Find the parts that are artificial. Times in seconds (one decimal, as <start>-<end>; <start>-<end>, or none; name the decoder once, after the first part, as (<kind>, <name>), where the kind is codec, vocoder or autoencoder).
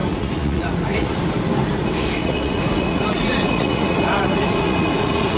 0.0-1.2 (vocoder, Vocos); 2.2-5.4